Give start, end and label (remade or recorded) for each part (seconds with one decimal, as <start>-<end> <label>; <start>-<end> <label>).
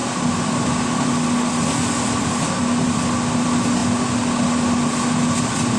0.0-5.8 recorded